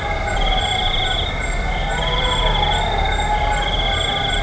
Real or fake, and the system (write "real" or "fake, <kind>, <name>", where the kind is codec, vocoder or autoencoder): real